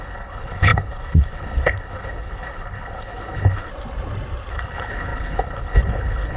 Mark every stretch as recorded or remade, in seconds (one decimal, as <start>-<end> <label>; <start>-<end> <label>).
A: 0.0-3.7 remade; 3.7-4.5 recorded; 4.5-6.4 remade